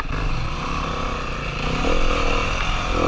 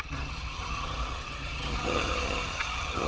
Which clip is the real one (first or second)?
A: first